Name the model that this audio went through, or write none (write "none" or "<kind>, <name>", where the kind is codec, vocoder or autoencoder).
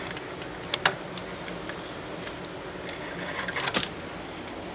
none